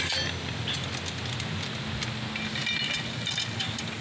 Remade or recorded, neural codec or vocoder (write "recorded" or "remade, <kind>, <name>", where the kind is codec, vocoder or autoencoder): recorded